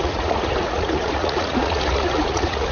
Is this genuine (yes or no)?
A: no